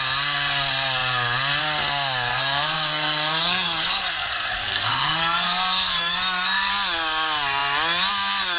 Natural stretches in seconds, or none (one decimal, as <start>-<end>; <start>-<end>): 0.0-2.3; 6.7-8.6